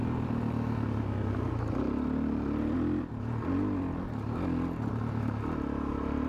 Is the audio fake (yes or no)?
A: no